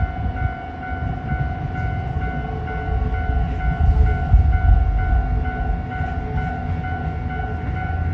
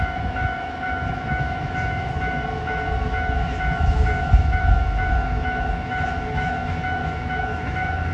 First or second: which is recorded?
first